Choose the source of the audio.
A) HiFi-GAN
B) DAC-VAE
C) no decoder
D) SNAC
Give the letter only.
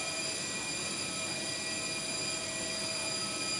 C